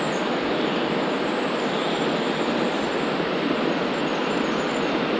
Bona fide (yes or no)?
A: yes